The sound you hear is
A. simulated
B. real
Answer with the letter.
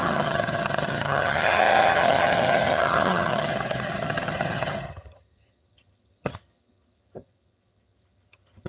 A